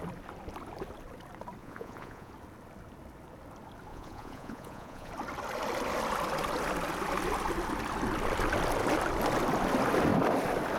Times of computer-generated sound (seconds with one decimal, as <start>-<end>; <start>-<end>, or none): 1.6-2.3; 3.9-5.1